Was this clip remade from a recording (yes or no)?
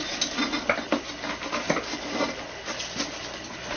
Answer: no